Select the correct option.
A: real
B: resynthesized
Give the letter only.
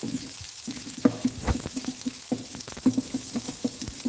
B